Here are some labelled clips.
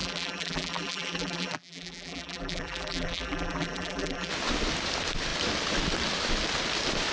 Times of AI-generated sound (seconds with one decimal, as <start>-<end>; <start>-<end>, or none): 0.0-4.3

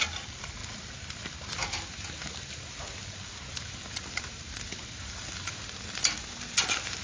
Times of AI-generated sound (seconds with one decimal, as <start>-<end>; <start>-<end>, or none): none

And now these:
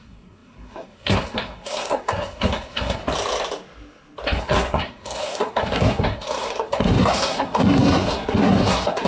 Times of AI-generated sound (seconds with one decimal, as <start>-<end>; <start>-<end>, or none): 0.0-3.0; 4.4-9.1

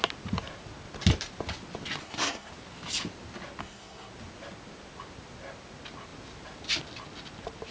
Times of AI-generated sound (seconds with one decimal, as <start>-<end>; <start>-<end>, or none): 2.0-2.5; 3.6-4.1